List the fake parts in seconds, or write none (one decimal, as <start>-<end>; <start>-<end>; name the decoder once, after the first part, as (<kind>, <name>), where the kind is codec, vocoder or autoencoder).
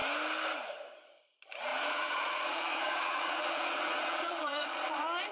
1.7-5.3 (vocoder, Vocos)